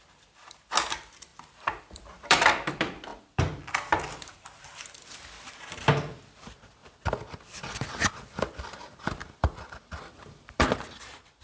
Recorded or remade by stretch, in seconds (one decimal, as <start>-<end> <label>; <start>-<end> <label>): 0.0-6.8 remade; 6.8-10.6 recorded; 10.6-11.4 remade